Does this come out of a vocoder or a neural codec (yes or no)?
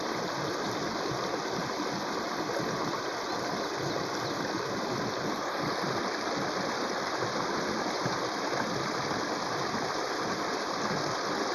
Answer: no